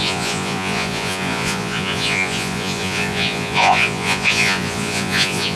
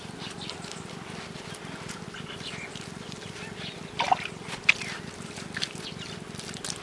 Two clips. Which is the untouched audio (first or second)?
second